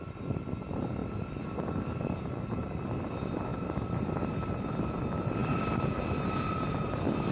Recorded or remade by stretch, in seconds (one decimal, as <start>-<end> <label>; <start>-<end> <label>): 0.0-1.0 recorded; 1.0-1.6 remade; 1.6-5.4 recorded; 5.4-6.0 remade; 6.0-7.3 recorded